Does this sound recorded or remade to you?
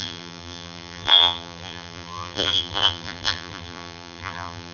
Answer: remade